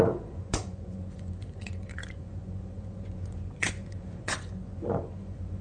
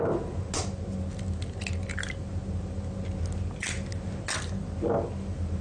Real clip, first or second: second